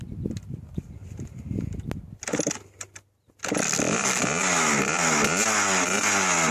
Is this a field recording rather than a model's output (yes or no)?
yes